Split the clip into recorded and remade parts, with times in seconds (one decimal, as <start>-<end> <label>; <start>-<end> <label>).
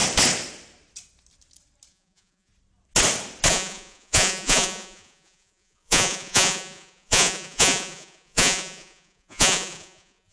0.0-1.9 recorded; 1.9-2.5 remade; 2.5-3.5 recorded; 3.5-10.3 remade